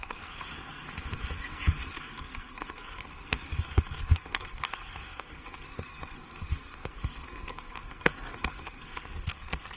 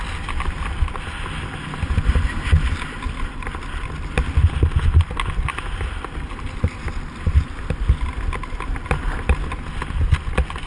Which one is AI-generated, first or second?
first